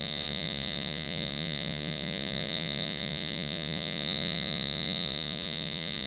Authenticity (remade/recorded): remade